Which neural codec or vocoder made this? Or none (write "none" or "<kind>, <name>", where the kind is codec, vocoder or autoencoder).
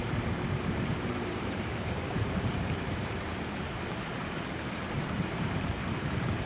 vocoder, BigVGAN v2